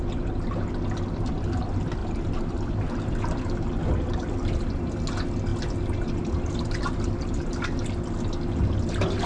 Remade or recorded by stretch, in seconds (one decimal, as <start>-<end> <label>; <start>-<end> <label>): 0.0-9.3 recorded